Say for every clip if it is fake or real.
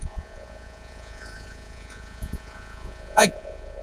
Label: fake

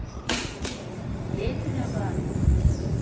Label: fake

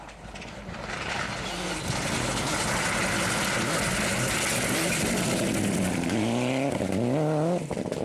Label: real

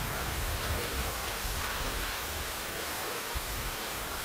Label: fake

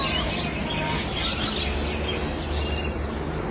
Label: real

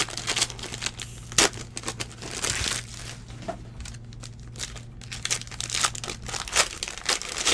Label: real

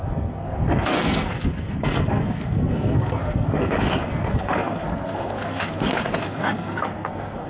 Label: fake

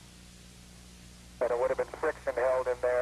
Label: real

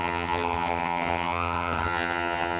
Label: fake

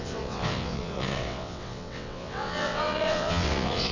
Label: fake